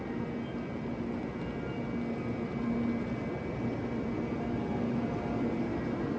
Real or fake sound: real